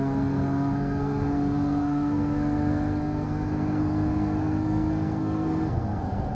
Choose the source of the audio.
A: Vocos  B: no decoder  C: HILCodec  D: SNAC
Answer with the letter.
D